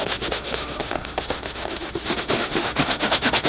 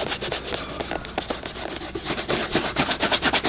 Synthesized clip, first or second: first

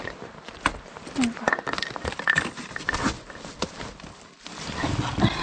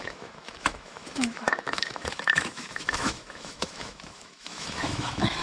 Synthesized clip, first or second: second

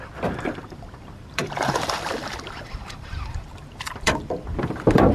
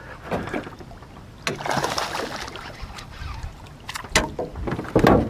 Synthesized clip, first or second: first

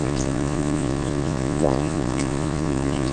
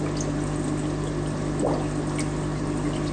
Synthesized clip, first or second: first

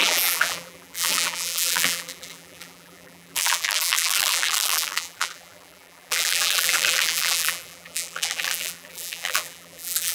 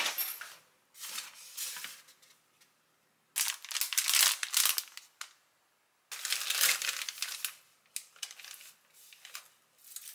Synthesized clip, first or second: first